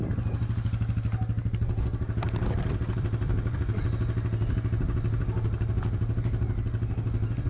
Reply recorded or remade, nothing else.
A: recorded